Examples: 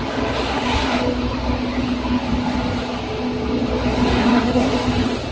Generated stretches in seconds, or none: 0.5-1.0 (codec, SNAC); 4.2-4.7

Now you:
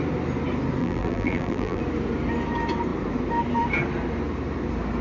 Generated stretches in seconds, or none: 0.8-1.8 (vocoder, BigVGAN v2)

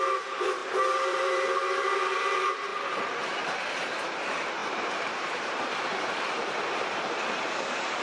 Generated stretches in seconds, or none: 0.0-0.6 (vocoder, BigVGAN v2); 1.1-2.7; 3.4-8.0

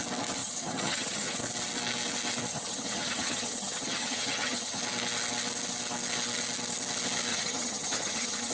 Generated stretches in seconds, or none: 0.4-1.4 (vocoder, HiFi-GAN); 2.5-4.8; 7.3-8.5

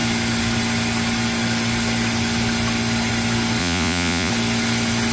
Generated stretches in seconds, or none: 3.6-4.3 (vocoder, Vocos)

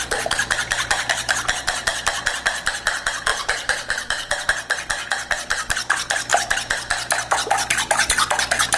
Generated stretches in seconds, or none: 3.3-4.5 (vocoder, BigVGAN v2)